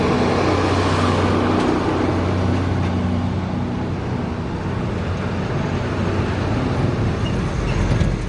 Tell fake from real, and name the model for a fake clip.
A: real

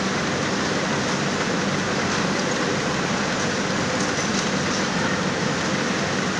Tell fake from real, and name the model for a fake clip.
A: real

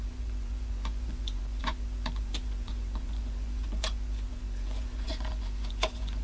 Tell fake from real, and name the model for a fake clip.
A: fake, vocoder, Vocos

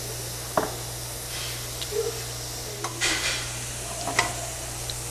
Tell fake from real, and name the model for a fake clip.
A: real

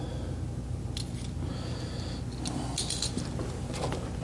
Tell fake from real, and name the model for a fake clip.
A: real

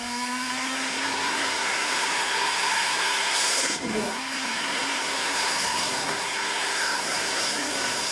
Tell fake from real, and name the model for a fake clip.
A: fake, codec, SNAC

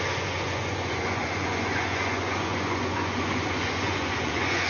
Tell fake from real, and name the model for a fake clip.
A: fake, vocoder, Vocos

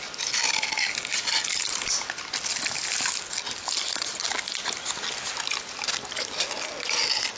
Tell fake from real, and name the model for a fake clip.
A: real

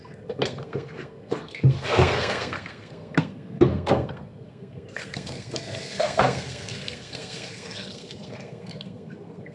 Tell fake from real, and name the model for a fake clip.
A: fake, codec, SNAC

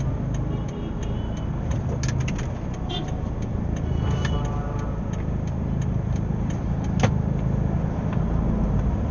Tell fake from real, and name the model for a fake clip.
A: real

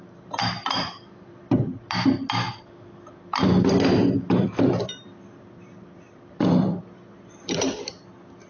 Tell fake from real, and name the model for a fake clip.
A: fake, vocoder, BigVGAN v2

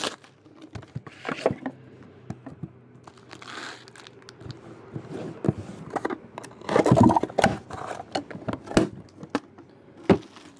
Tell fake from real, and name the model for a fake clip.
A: real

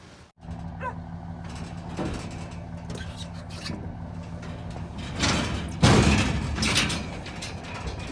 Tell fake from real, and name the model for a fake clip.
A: real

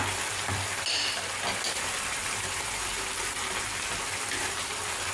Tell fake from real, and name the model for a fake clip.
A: real